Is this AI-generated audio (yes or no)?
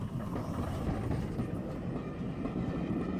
no